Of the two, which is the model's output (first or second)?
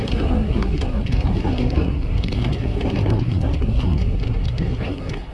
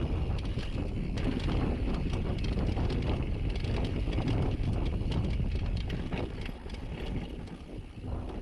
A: first